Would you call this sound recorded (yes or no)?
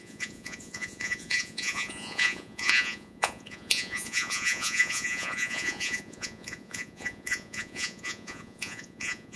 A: no